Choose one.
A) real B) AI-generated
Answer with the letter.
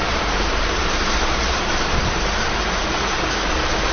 A